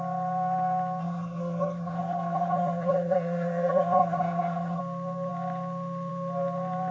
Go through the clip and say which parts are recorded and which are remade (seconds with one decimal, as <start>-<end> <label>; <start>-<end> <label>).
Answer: 0.0-1.0 recorded; 1.0-4.8 remade; 4.8-6.9 recorded